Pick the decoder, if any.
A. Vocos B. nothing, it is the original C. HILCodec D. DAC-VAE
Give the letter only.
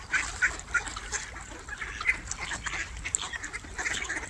B